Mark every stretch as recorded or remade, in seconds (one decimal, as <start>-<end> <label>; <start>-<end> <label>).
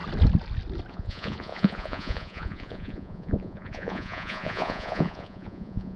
0.0-0.9 recorded; 0.9-6.0 remade